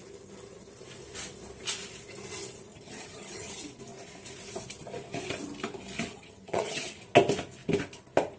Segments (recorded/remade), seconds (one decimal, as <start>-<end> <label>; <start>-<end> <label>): 0.0-2.7 recorded; 2.7-3.5 remade; 3.5-6.1 recorded; 6.1-7.0 remade; 7.0-8.4 recorded